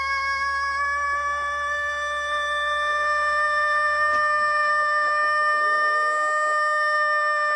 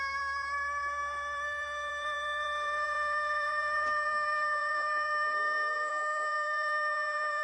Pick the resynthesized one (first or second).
second